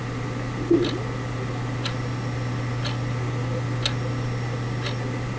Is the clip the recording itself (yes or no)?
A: yes